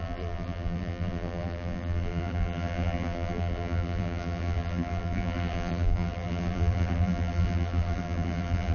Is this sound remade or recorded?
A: remade